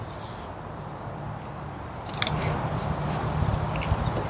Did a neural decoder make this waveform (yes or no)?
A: yes